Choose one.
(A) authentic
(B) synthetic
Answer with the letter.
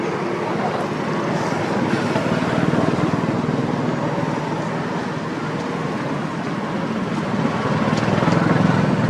A